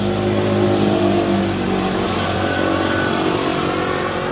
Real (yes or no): yes